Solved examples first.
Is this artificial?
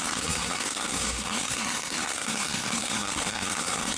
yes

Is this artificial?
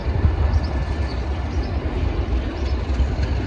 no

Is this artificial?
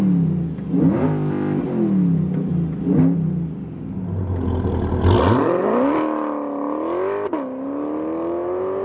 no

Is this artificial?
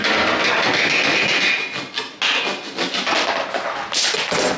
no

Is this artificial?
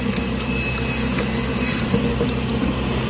no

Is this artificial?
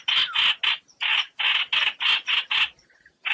no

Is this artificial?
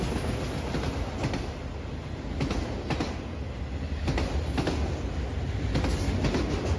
no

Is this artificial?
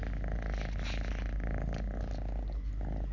no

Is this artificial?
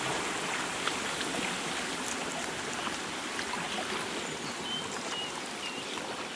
no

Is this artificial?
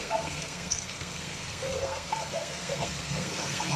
yes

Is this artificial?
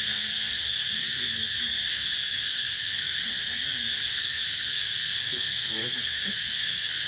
yes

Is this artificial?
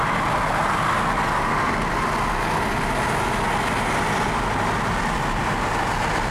no